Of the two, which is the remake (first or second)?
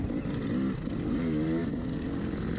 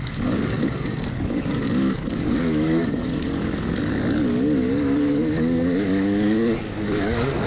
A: second